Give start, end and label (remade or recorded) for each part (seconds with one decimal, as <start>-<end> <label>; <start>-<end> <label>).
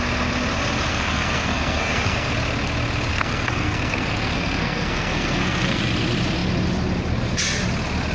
0.0-0.9 recorded; 0.9-2.3 remade; 2.3-3.1 recorded; 3.1-5.8 remade; 5.8-8.1 recorded